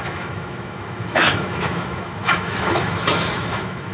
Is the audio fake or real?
fake